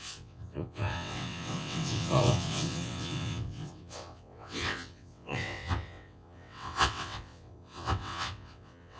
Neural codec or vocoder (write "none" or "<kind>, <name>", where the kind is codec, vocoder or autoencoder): vocoder, WaveNeXt